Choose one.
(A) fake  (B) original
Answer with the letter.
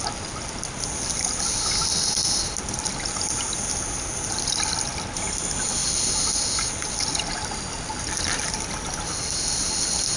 B